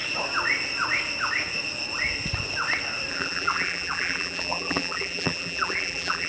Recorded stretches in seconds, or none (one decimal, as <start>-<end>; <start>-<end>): 0.0-3.1

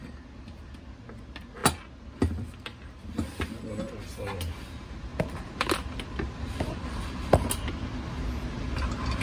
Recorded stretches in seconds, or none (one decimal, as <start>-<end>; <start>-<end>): 0.0-5.1; 6.9-9.2

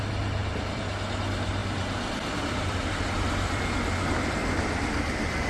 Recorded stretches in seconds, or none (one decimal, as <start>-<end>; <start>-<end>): 0.0-0.4; 1.1-1.6; 3.7-4.4